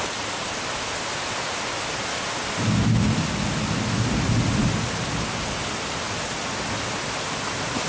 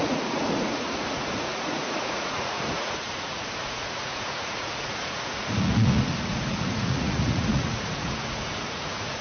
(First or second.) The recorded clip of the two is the first